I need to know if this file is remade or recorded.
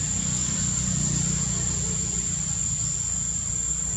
recorded